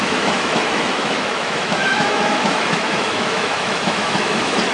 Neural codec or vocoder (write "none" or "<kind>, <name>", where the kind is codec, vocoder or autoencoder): autoencoder, DAC-VAE